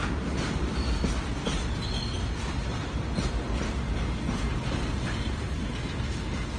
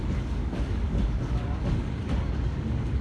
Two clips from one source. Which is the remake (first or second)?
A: second